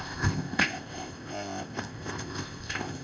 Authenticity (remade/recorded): remade